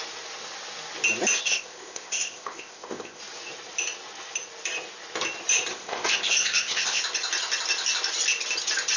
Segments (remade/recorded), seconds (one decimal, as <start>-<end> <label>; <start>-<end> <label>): 0.0-1.4 recorded; 1.4-3.2 remade; 3.2-5.7 recorded; 5.7-7.0 remade; 7.0-9.0 recorded

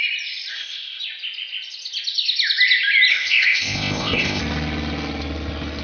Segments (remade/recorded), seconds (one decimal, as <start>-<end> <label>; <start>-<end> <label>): 0.0-0.5 recorded; 0.5-1.0 remade; 1.0-3.1 recorded; 3.1-4.4 remade; 4.4-5.8 recorded